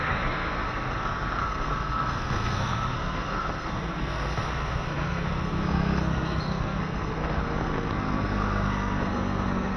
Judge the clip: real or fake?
fake